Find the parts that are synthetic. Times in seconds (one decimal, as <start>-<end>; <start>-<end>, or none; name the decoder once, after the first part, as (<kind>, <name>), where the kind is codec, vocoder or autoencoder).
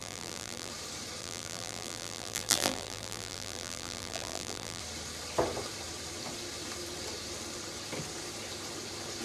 0.0-0.7 (vocoder, BigVGAN v2); 1.2-4.8